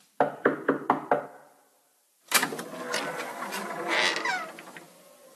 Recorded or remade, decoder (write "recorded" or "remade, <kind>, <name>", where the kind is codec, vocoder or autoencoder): recorded